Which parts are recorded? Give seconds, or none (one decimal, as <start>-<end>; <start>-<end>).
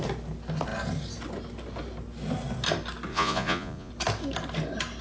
0.0-3.1; 3.9-5.0